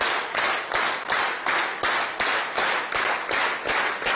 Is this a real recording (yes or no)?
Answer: yes